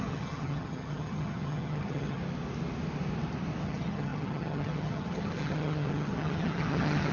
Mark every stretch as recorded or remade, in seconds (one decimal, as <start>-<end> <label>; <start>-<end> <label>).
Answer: 0.0-2.2 remade; 2.2-3.6 recorded; 3.6-7.1 remade